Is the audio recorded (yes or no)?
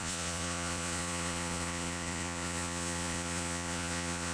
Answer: no